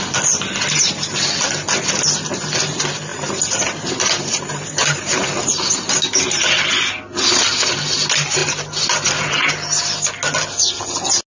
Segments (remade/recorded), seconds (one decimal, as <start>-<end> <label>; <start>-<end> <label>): 0.0-3.1 recorded; 3.1-6.7 remade; 6.7-11.4 recorded